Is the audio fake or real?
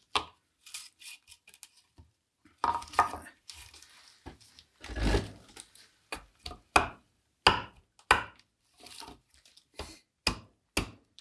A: real